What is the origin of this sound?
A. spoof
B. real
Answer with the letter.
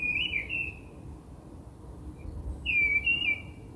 B